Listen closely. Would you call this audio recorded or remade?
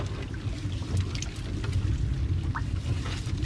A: recorded